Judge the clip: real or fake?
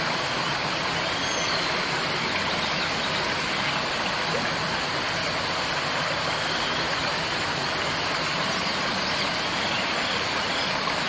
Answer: real